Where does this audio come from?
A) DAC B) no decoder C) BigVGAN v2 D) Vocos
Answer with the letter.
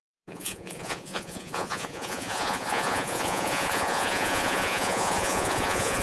D